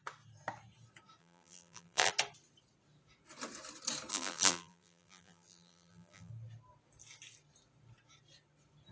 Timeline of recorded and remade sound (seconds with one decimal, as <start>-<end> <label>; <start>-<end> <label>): 0.0-1.2 recorded; 1.2-2.1 remade; 2.1-4.1 recorded; 4.1-6.3 remade; 6.3-8.9 recorded